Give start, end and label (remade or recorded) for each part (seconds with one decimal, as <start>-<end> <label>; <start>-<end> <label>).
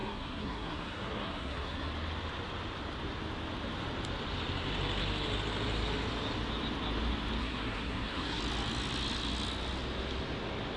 0.0-1.9 remade; 1.9-7.4 recorded; 7.4-8.4 remade; 8.4-10.8 recorded